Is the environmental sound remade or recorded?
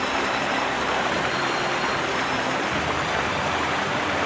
remade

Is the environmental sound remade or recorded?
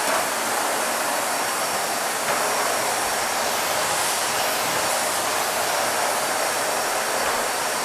remade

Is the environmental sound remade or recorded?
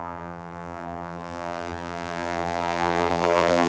remade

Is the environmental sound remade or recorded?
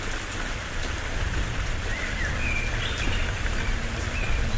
remade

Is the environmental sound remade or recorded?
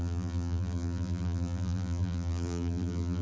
remade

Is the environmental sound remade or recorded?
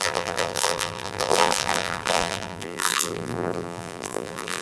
remade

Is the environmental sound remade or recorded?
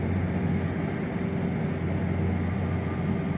recorded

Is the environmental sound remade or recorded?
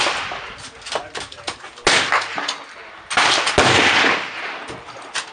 recorded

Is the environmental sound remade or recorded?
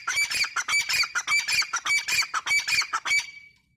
recorded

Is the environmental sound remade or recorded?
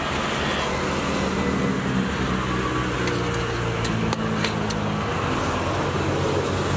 recorded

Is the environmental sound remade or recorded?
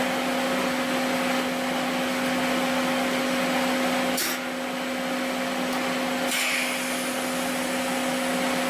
recorded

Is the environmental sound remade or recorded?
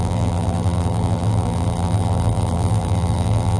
remade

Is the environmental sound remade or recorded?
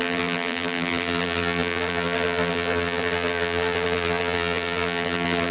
remade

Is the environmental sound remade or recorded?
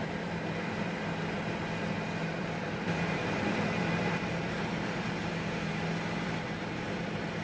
remade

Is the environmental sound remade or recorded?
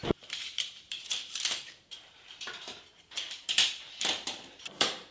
remade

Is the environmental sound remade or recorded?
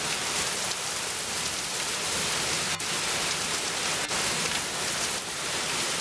recorded